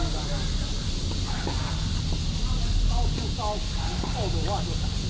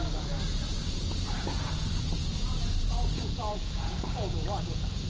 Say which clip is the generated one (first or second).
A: second